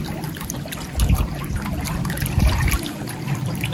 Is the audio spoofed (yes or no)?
no